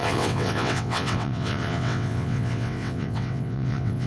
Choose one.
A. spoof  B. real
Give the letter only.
A